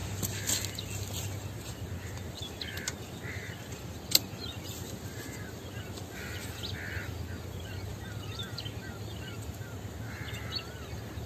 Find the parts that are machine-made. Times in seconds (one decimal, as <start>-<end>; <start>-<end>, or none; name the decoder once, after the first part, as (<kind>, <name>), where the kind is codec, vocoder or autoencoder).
none